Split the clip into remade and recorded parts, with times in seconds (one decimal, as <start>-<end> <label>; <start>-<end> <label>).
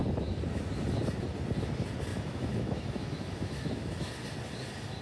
0.0-2.1 recorded; 2.1-4.1 remade; 4.1-5.0 recorded